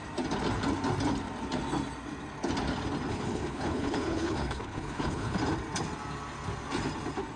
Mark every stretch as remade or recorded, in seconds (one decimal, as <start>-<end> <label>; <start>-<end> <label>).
0.0-3.1 recorded; 3.1-5.4 remade; 5.4-7.4 recorded